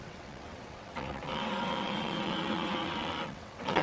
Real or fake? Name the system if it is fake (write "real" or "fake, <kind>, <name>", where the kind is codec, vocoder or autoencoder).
fake, vocoder, WaveNeXt